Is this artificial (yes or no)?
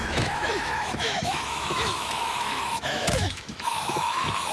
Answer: yes